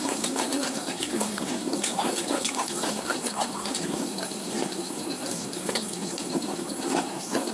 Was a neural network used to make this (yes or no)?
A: yes